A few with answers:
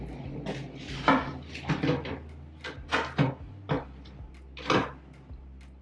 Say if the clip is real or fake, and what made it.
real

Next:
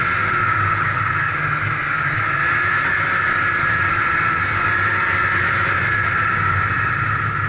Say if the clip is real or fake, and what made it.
real